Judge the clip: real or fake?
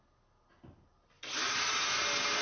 real